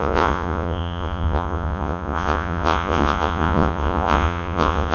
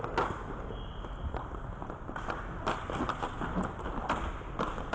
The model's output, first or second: first